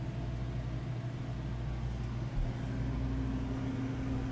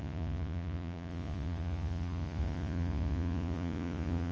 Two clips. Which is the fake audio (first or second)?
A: second